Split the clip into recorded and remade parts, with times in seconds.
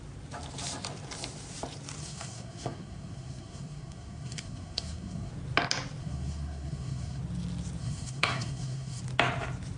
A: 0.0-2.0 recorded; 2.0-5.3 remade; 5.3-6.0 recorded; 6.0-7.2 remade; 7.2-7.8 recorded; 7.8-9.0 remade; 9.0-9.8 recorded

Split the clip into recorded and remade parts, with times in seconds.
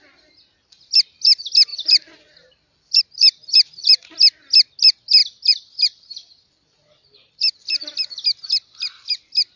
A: 0.0-1.7 recorded; 1.7-3.0 remade; 3.0-5.2 recorded; 5.2-7.5 remade; 7.5-9.6 recorded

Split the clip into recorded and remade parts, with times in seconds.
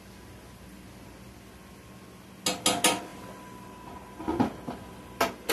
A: 0.0-5.5 recorded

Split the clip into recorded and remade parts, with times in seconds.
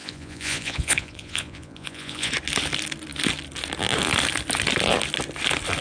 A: 0.0-2.3 remade; 2.3-5.8 recorded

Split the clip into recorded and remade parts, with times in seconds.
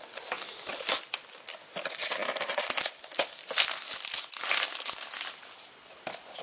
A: 0.0-6.4 recorded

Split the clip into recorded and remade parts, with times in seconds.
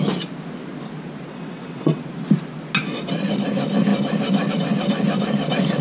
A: 0.0-1.3 recorded; 1.3-2.0 remade; 2.0-5.8 recorded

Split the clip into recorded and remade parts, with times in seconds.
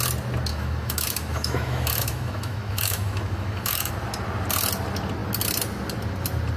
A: 0.0-0.5 recorded; 0.5-3.9 remade; 3.9-6.6 recorded